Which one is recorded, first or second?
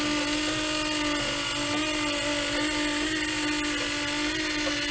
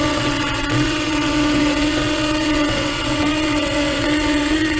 first